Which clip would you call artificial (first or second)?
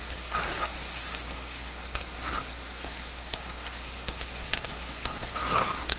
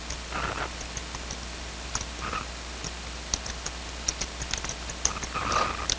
first